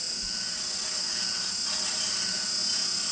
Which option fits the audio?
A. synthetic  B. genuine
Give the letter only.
B